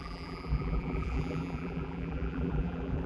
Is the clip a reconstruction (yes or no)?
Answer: yes